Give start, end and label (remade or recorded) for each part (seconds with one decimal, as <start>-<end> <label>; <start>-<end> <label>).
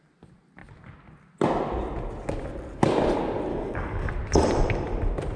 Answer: 0.0-3.5 recorded; 3.5-4.1 remade; 4.1-5.4 recorded